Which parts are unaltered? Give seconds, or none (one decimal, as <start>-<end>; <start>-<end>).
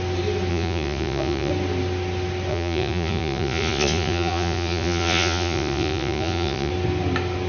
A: 0.0-0.5; 1.5-2.5; 6.7-7.5